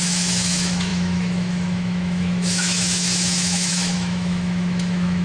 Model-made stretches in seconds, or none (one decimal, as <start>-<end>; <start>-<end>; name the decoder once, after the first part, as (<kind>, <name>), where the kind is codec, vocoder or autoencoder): 0.0-5.2 (autoencoder, DAC-VAE)